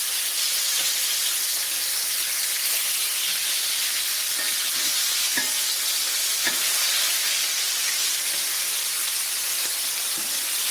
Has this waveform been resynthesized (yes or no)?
no